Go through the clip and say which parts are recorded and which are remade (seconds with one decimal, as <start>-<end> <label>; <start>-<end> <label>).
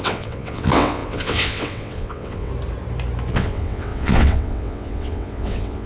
0.0-2.5 remade; 2.5-3.3 recorded; 3.3-5.9 remade